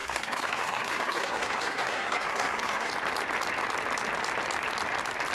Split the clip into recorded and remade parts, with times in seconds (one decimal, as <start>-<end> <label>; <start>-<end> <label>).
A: 0.0-2.9 remade; 2.9-5.3 recorded